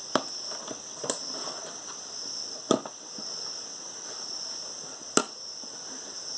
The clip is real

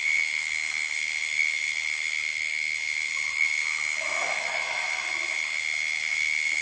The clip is fake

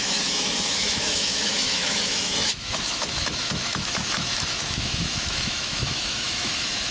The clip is fake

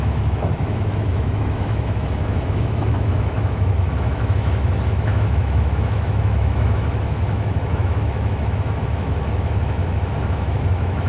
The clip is fake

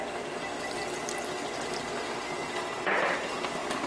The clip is real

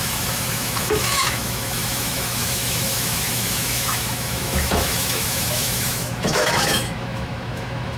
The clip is fake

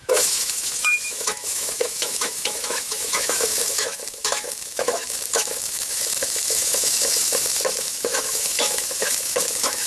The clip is fake